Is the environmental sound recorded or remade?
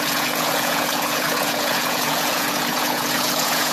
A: remade